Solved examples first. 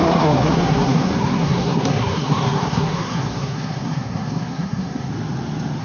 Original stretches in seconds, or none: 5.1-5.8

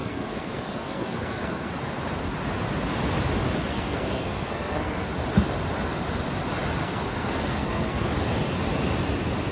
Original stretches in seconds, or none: 1.8-3.7; 5.1-6.8; 8.1-9.5